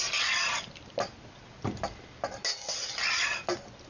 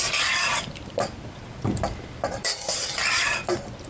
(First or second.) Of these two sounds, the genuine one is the first